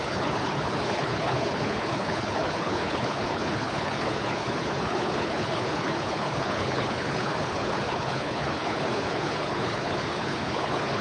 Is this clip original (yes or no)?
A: no